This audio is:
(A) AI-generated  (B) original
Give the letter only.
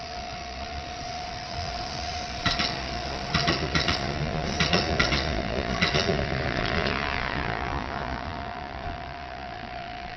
A